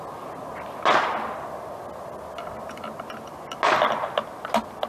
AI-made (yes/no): no